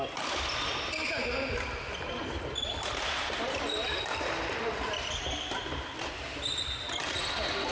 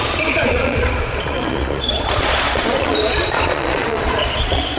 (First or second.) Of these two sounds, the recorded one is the first